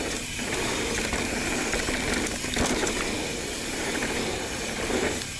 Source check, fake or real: real